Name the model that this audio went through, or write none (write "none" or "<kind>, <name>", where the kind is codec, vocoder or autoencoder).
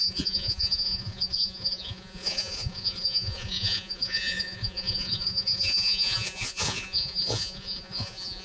vocoder, Vocos